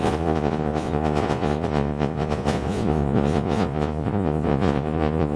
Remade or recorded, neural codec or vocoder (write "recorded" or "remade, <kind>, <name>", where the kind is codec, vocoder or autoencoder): remade, vocoder, Vocos